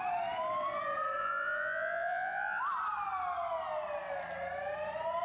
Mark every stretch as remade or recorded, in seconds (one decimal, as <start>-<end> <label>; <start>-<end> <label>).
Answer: 0.0-1.2 recorded; 1.2-2.6 remade; 2.6-5.2 recorded